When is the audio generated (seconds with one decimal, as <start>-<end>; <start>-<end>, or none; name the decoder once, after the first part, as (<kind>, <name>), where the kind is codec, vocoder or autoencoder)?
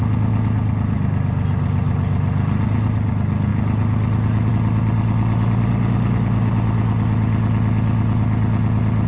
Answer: none